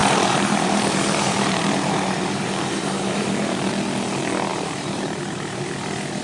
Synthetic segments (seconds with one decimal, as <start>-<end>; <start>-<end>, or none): 0.0-3.7; 4.5-5.6